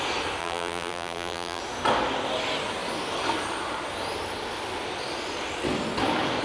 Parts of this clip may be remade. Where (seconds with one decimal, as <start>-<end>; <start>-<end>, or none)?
0.4-1.6